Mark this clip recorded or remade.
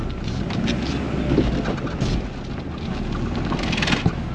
recorded